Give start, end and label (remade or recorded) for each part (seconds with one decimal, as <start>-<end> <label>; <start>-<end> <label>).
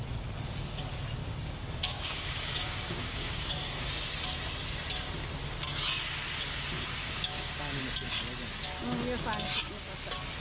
0.0-1.2 recorded; 1.2-3.9 remade; 3.9-7.0 recorded; 7.0-7.8 remade; 7.8-10.4 recorded